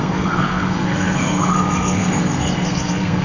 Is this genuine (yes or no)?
no